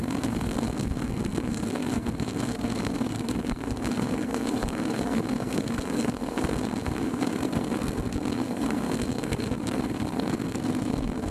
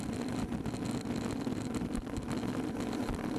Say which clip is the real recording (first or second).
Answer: second